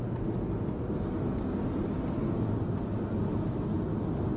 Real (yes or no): yes